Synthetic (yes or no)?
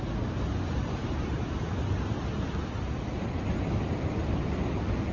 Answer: no